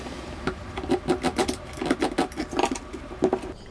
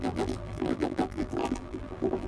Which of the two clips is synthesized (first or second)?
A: second